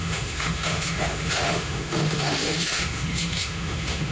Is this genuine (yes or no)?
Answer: no